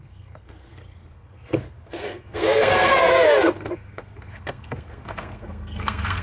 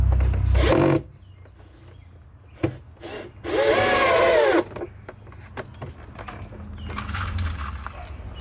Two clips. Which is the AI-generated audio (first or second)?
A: first